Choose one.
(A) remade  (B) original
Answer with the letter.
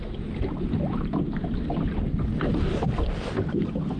B